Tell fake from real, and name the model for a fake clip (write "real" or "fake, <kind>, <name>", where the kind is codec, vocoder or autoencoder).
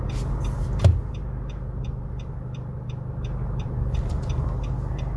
real